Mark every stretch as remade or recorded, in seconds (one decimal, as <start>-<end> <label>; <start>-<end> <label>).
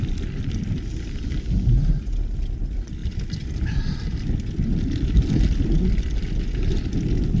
0.0-7.4 recorded